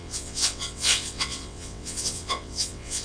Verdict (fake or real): fake